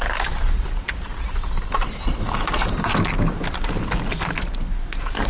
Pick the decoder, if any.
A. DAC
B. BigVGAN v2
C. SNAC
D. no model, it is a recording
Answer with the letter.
D